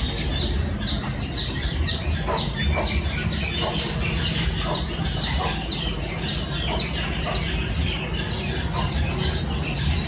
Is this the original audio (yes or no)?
yes